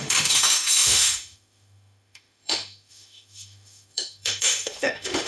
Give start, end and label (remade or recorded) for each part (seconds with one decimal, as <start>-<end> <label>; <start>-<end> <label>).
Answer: 0.0-5.3 remade